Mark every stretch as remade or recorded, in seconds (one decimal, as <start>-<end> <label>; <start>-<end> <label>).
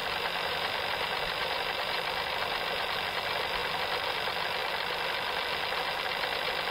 0.0-2.4 remade; 2.4-6.7 recorded